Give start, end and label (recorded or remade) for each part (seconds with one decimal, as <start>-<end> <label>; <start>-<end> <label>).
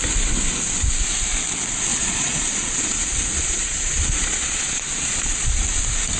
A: 0.0-1.9 recorded; 1.9-5.6 remade; 5.6-6.2 recorded